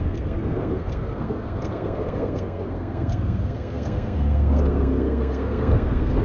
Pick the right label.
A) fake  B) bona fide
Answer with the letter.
A